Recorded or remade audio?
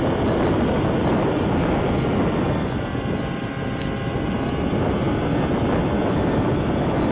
recorded